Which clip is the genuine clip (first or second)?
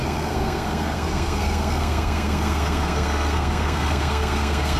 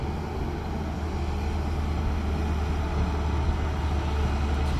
second